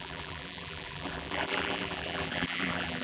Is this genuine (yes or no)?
no